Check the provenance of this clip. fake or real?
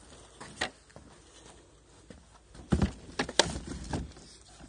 real